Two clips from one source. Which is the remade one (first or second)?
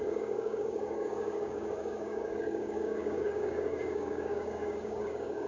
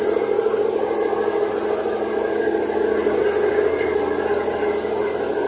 first